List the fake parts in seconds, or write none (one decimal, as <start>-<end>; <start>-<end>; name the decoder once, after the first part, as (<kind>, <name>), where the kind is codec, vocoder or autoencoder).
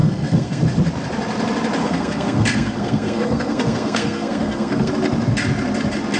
0.0-0.6 (codec, SNAC); 1.8-4.9